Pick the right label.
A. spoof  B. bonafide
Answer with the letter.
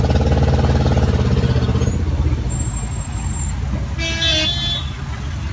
B